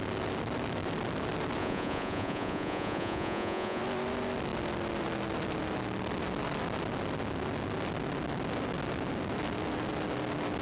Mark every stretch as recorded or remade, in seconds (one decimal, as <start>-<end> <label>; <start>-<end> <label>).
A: 0.0-1.6 recorded; 1.6-3.8 remade; 3.8-10.6 recorded